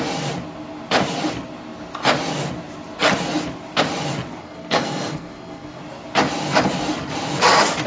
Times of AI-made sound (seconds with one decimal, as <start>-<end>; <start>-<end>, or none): 4.4-5.8